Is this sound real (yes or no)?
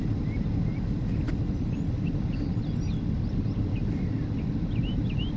yes